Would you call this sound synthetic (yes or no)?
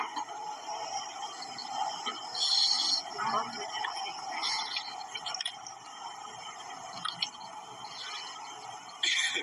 no